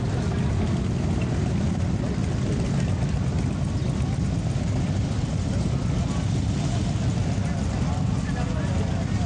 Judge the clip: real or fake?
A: real